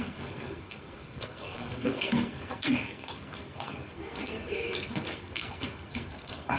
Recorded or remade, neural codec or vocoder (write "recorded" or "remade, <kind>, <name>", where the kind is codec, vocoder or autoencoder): remade, codec, SNAC